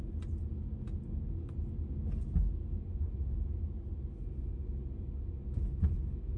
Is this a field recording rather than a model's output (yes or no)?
yes